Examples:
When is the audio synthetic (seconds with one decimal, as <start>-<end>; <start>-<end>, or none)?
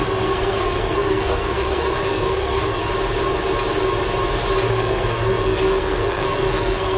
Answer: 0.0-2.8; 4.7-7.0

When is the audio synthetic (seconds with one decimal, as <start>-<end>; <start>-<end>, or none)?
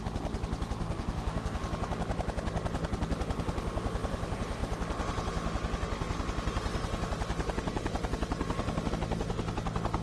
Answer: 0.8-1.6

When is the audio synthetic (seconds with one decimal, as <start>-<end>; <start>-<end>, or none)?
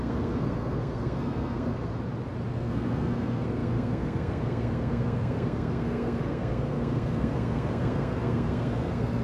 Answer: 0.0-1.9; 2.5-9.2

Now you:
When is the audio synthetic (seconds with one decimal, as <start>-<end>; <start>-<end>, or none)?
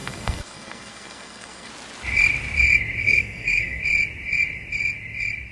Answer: 0.0-1.7; 3.0-3.8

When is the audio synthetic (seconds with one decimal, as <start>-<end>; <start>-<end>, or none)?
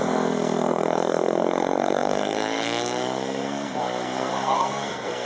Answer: 0.0-5.3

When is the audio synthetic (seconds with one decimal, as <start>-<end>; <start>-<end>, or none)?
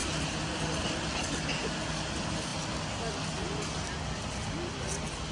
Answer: none